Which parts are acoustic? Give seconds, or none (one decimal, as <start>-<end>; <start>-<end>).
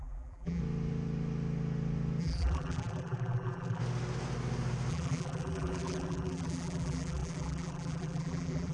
0.6-2.2; 3.8-4.9